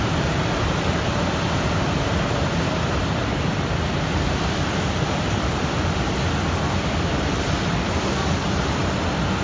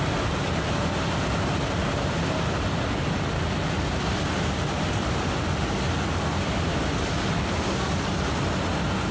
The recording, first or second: second